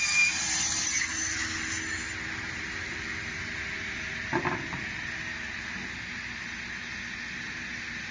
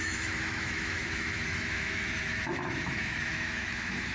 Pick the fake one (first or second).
second